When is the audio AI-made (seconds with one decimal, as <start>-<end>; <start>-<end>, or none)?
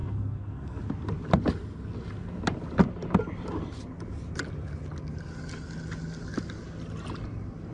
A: 0.0-0.8